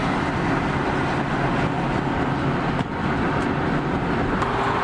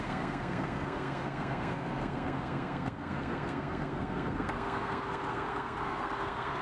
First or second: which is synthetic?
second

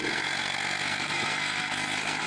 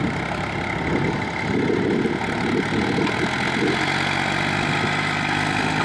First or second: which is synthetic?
first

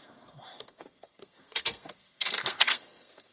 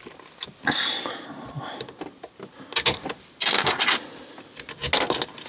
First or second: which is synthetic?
first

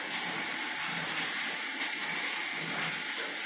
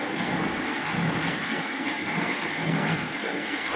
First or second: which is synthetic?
second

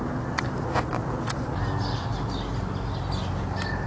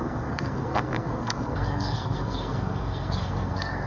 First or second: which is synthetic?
second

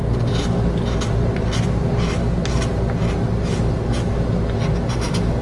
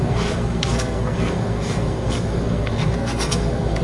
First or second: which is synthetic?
second